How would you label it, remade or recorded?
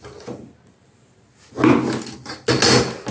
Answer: recorded